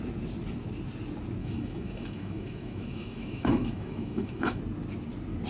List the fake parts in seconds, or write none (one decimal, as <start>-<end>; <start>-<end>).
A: 1.4-4.6